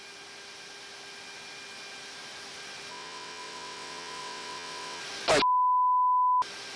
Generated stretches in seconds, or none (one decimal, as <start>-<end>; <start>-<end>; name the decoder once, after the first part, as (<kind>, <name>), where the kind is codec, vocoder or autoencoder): 2.9-5.0 (vocoder, WaveNeXt)